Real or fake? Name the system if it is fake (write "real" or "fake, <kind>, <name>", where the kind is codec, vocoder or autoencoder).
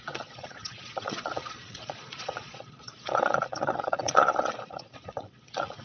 fake, vocoder, Vocos